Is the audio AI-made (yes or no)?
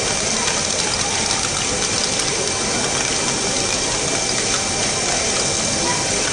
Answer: no